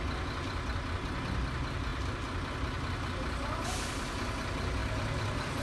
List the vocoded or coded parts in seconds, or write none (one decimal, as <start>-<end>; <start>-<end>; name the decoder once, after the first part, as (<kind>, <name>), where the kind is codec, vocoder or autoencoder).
none